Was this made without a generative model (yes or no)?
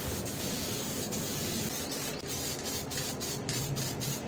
yes